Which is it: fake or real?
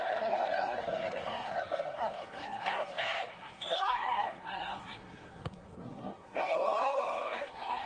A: fake